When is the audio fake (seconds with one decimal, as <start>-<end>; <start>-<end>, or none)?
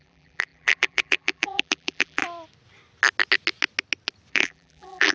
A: 0.0-2.2; 4.3-5.1